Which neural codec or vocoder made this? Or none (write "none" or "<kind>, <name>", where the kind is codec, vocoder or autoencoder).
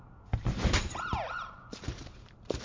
vocoder, BigVGAN v2